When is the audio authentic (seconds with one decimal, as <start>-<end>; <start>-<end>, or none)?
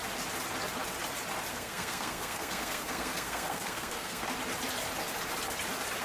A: 0.0-1.5; 4.2-6.0